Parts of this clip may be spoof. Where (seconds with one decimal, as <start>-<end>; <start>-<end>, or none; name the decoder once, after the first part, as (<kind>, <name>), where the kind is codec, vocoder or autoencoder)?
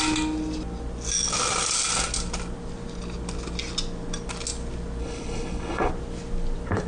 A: 5.0-5.9 (codec, HILCodec)